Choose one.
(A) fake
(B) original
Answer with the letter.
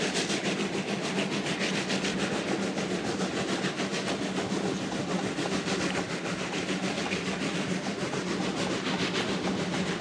B